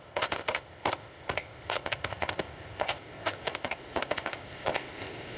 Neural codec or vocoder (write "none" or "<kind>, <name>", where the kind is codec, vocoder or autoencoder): codec, ZipCodec